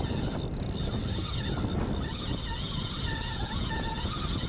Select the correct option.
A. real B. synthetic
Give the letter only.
A